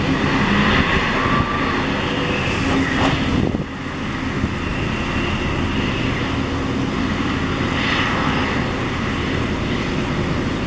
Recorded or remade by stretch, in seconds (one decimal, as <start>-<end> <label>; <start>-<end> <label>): 0.0-10.7 recorded